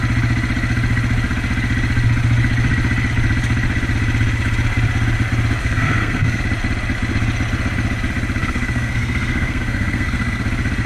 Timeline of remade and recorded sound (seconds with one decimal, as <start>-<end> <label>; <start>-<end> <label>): 0.0-5.6 recorded; 5.6-6.4 remade; 6.4-8.4 recorded; 8.4-10.4 remade; 10.4-10.9 recorded